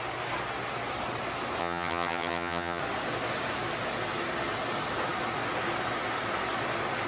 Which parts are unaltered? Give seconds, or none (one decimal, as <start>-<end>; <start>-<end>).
0.0-1.6; 2.8-7.1